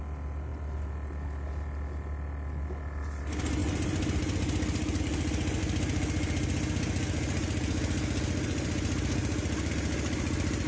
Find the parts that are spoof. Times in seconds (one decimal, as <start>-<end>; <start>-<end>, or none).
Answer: none